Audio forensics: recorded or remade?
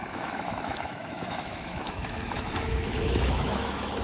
remade